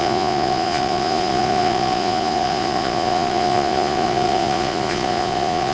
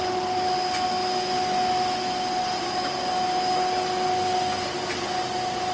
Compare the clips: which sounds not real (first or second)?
first